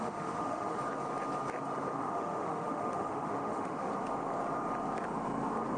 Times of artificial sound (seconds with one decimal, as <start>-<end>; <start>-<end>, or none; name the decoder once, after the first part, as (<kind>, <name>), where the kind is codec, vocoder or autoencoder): 0.0-0.8 (autoencoder, DAC-VAE); 2.0-3.9